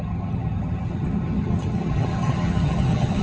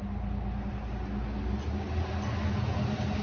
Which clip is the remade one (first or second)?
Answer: first